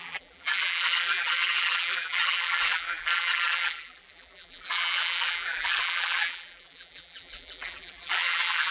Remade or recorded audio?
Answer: remade